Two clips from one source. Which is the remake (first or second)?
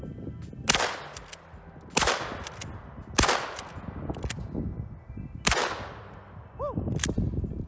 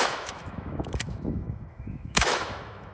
second